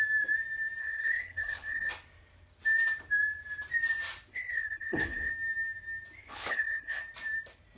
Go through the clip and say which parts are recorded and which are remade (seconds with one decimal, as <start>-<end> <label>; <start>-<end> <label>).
0.0-0.8 recorded; 0.8-1.9 remade; 1.9-4.3 recorded; 4.3-5.3 remade; 5.3-6.2 recorded; 6.2-7.0 remade; 7.0-7.8 recorded